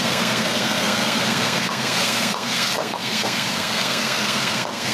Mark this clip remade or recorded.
remade